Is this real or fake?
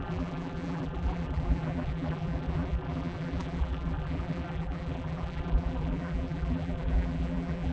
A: fake